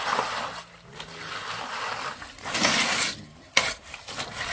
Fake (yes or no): no